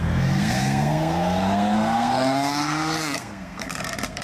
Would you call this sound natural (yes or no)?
no